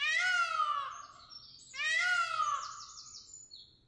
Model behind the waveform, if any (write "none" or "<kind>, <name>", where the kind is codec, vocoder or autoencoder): none